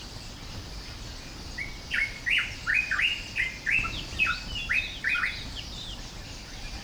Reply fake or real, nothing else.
real